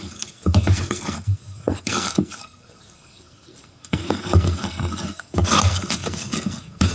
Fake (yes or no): yes